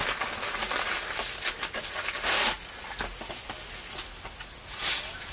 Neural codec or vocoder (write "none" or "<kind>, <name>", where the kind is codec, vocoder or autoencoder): none